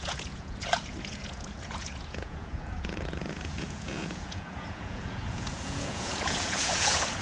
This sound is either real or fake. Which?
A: fake